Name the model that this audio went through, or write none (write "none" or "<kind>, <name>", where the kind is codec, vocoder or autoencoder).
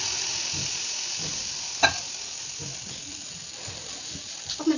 none